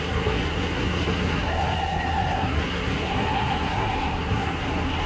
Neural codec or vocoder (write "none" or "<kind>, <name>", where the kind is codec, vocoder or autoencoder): codec, SNAC